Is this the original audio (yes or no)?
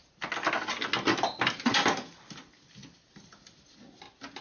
yes